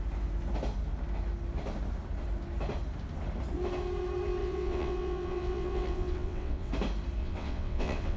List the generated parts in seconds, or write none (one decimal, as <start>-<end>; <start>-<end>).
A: 4.4-6.7; 7.2-8.2